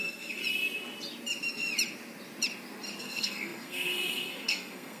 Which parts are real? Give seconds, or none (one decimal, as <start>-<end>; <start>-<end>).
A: 0.4-3.0